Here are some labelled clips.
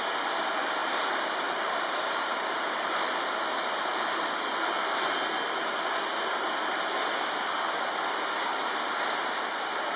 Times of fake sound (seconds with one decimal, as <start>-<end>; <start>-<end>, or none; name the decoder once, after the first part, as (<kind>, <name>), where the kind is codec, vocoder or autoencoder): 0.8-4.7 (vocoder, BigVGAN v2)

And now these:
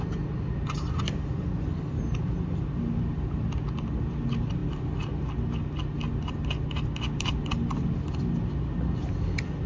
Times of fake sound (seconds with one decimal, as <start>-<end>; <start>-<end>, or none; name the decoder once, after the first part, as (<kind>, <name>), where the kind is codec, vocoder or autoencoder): none

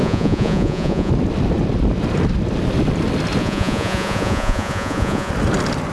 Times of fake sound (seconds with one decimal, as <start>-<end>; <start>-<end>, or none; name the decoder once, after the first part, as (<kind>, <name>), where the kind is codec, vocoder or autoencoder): 0.0-1.1 (vocoder, Vocos); 3.4-5.3

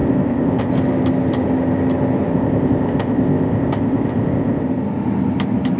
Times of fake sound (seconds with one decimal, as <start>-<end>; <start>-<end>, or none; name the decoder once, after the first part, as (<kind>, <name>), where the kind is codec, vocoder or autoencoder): 0.0-0.7 (codec, ZipCodec); 2.3-4.6

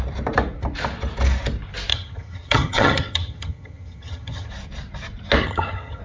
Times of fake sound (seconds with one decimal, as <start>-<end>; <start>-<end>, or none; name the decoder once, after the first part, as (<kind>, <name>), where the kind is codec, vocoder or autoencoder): 1.9-4.5 (vocoder, HiFi-GAN); 5.4-6.0